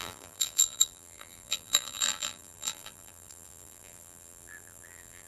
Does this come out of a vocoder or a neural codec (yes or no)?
yes